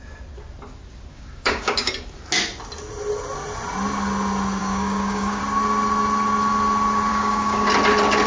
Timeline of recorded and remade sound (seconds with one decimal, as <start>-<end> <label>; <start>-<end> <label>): 0.0-1.1 recorded; 1.1-1.9 remade; 1.9-4.6 recorded; 4.6-5.4 remade; 5.4-7.1 recorded; 7.1-7.7 remade; 7.7-8.3 recorded